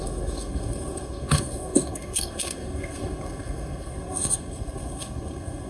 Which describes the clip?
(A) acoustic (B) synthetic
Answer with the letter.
B